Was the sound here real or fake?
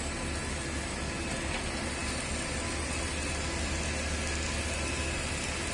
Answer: real